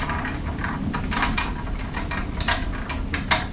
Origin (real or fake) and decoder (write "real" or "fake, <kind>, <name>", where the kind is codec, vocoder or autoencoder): real